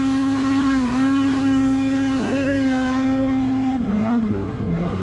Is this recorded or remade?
remade